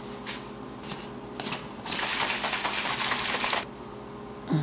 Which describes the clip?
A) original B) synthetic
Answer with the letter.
A